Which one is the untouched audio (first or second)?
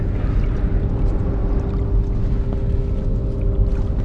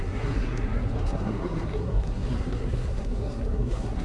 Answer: first